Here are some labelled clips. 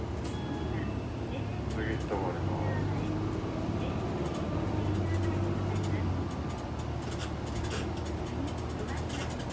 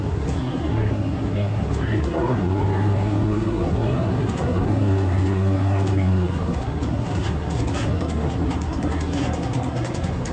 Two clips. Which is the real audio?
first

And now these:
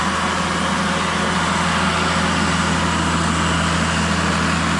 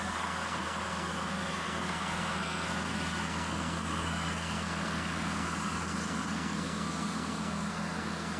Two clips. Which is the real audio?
first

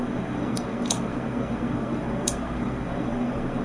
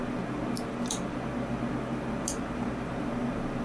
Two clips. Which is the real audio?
second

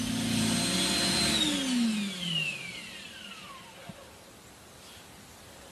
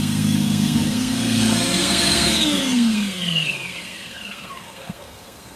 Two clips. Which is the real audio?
first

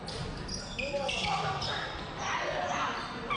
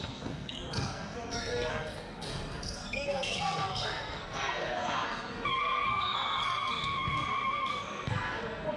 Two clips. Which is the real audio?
first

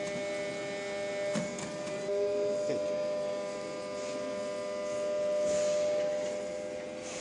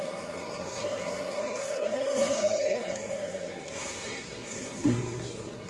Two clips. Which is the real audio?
first